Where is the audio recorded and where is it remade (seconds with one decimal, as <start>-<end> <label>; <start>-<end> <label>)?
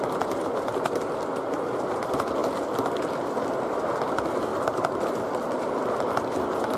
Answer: 0.0-4.5 recorded; 4.5-5.3 remade; 5.3-6.8 recorded